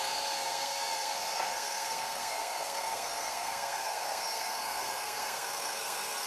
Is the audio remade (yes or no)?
yes